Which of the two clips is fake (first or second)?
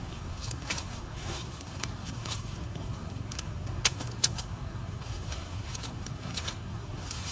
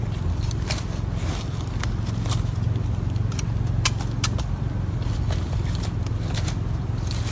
first